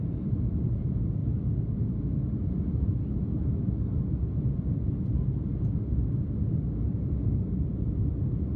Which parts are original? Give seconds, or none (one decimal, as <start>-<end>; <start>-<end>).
0.0-8.6